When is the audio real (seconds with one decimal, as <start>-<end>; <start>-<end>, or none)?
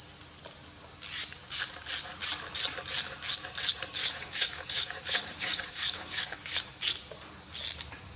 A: 0.0-4.0; 6.6-8.2